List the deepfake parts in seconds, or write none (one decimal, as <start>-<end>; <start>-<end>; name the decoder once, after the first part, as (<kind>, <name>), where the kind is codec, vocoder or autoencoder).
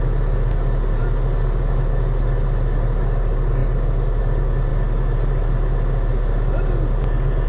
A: none